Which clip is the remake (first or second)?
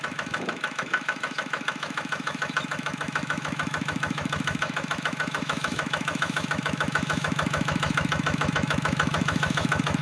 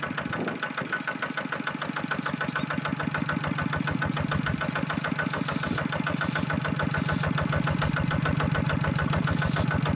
first